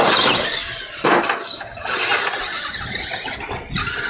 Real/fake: real